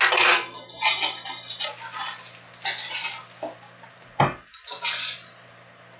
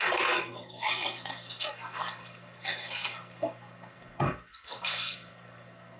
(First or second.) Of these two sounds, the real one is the first